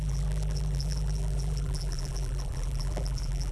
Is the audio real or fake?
fake